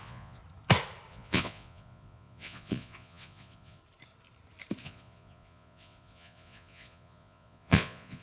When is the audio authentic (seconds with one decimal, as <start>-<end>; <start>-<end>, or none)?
0.4-1.1; 3.8-4.8